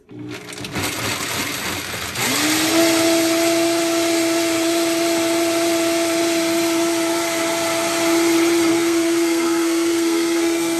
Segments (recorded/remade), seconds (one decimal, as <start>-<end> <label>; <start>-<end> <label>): 0.0-8.7 recorded; 8.7-10.8 remade